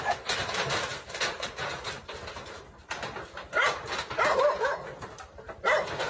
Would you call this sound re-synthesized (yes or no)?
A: no